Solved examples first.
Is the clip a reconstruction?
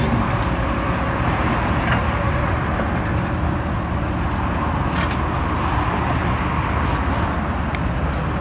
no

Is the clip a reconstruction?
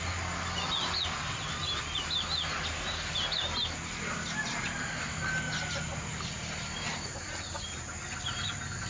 no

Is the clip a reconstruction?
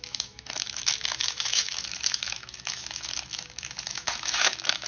yes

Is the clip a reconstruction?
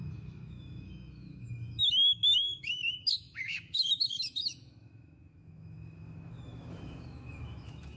yes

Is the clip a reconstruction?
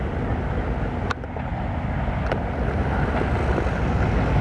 no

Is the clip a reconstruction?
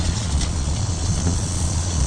yes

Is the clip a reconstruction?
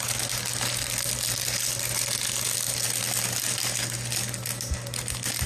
no